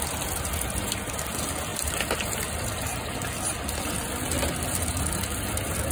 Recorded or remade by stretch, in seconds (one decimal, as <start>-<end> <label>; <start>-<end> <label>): 0.0-5.9 recorded